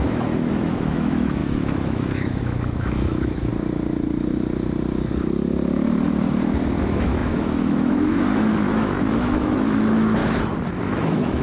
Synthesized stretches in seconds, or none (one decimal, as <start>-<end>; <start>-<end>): 0.0-3.5; 6.8-10.2; 10.7-11.4